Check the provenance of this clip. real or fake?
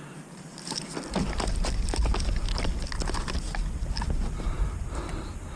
real